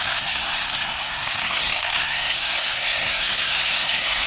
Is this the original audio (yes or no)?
no